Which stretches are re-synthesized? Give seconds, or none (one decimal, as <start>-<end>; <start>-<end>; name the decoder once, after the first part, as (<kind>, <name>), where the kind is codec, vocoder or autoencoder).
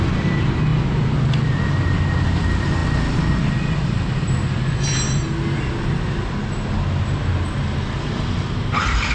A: none